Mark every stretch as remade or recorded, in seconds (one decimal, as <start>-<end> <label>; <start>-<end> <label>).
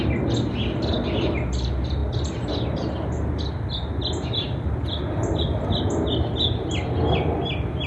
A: 0.0-7.9 recorded